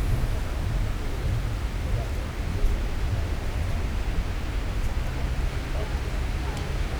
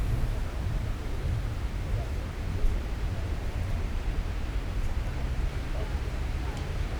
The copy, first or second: second